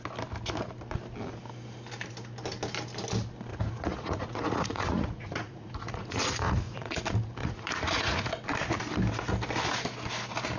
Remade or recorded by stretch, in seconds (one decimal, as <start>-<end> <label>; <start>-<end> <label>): 0.0-3.5 recorded; 3.5-7.0 remade; 7.0-7.4 recorded; 7.4-8.3 remade; 8.3-10.6 recorded